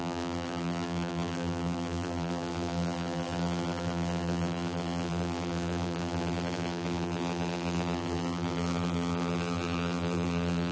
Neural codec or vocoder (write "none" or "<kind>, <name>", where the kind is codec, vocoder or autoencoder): vocoder, BigVGAN v2